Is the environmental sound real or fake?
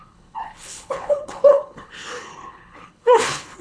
fake